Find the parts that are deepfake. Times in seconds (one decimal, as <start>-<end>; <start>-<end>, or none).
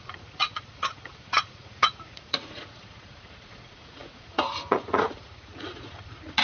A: 0.0-6.4